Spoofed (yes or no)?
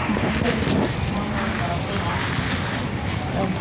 no